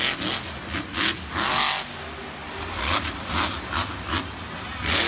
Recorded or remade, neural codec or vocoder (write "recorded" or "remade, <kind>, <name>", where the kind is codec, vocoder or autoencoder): recorded